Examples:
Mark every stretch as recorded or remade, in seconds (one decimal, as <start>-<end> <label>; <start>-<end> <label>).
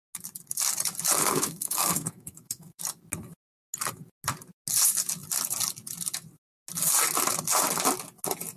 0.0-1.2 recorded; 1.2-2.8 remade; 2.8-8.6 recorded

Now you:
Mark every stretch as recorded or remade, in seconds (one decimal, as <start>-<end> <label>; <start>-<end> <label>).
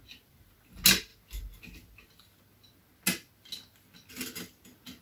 0.0-5.0 recorded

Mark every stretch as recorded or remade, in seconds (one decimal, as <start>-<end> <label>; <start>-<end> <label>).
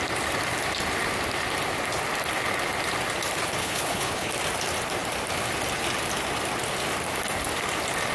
0.0-3.6 recorded; 3.6-4.3 remade; 4.3-8.1 recorded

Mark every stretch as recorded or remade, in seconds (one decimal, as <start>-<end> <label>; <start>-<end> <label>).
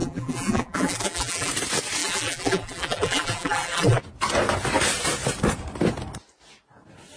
0.0-1.5 remade; 1.5-2.0 recorded; 2.0-4.0 remade; 4.0-7.2 recorded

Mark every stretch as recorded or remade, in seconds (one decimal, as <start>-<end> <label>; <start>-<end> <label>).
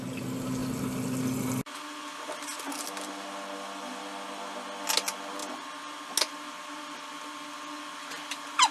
0.0-8.7 recorded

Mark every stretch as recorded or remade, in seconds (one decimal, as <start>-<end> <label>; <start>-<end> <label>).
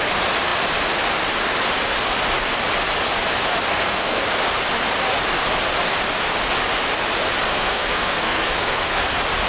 0.0-3.7 recorded; 3.7-4.2 remade; 4.2-7.5 recorded; 7.5-9.0 remade; 9.0-9.5 recorded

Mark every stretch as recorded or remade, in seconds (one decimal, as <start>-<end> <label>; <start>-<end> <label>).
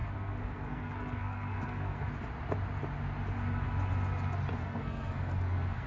0.0-2.1 remade; 2.1-4.6 recorded; 4.6-5.9 remade